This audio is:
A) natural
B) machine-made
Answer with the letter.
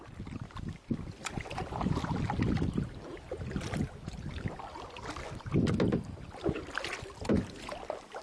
A